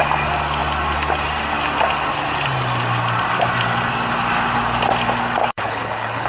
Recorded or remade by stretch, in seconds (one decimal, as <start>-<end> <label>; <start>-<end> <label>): 0.0-5.4 recorded; 5.4-6.3 remade